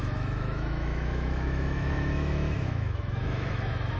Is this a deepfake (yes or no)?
yes